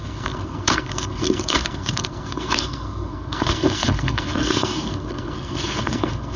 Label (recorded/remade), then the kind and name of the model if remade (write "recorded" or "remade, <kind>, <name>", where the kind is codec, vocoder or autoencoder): remade, codec, SNAC